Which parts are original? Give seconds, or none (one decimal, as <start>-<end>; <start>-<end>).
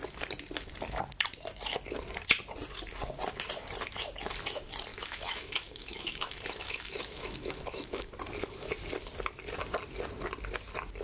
0.0-4.9; 8.0-11.0